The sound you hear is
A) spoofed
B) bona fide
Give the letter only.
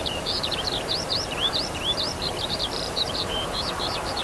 A